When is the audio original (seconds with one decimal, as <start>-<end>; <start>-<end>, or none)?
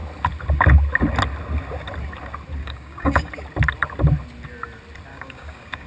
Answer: 0.0-2.6; 3.3-5.1